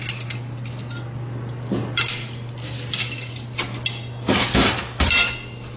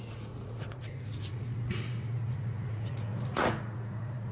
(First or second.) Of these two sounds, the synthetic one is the second